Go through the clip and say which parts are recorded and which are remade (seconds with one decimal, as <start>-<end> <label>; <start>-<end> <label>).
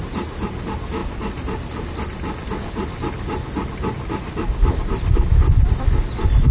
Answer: 0.0-6.5 recorded